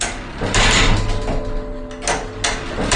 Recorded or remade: recorded